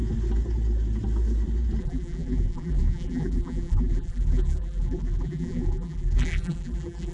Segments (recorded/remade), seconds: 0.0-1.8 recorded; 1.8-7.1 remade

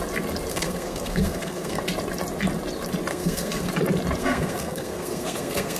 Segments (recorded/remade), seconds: 0.0-0.5 recorded; 0.5-1.8 remade; 1.8-3.1 recorded; 3.1-3.7 remade; 3.7-4.2 recorded; 4.2-5.8 remade

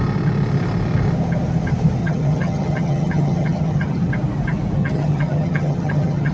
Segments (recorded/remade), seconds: 0.0-2.0 recorded; 2.0-4.1 remade; 4.1-4.8 recorded; 4.8-6.3 remade

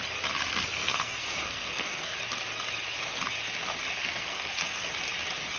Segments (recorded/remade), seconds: 0.0-0.5 recorded; 0.5-2.1 remade; 2.1-4.0 recorded; 4.0-4.9 remade; 4.9-5.6 recorded

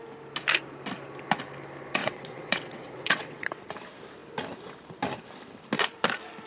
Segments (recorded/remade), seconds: 0.0-2.0 recorded; 2.0-3.6 remade; 3.6-6.5 recorded

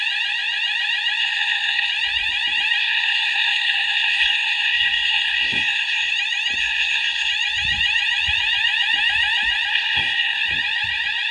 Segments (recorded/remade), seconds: 0.0-1.2 recorded; 1.2-1.9 remade; 1.9-2.8 recorded; 2.8-6.1 remade; 6.1-6.6 recorded; 6.6-7.3 remade; 7.3-9.7 recorded; 9.7-10.4 remade; 10.4-11.3 recorded